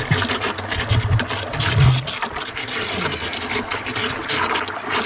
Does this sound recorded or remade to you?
recorded